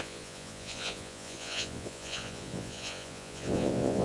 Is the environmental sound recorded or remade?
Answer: remade